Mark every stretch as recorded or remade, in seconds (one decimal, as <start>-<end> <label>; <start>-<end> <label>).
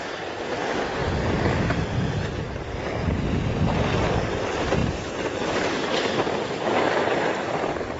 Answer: 0.0-4.8 recorded; 4.8-6.7 remade; 6.7-8.0 recorded